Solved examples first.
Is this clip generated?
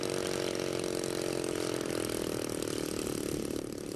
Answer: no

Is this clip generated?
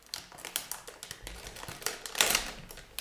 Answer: no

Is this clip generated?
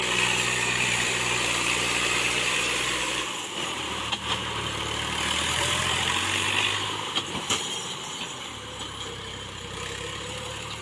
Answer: yes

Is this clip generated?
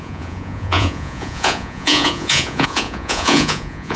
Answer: yes